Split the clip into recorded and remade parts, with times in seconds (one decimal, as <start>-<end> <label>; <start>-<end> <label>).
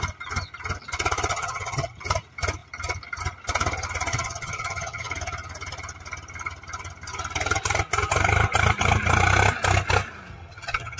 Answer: 0.0-1.3 recorded; 1.3-2.0 remade; 2.0-4.1 recorded; 4.1-5.1 remade; 5.1-10.3 recorded; 10.3-11.0 remade